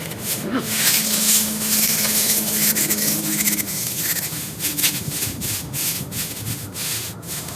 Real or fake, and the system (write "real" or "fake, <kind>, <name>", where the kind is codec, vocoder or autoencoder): fake, autoencoder, DAC-VAE